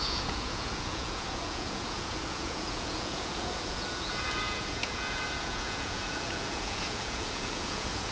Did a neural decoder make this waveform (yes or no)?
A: yes